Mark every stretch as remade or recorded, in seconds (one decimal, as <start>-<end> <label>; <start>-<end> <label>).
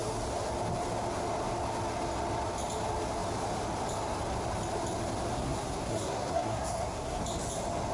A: 0.0-5.3 recorded; 5.3-7.2 remade; 7.2-7.9 recorded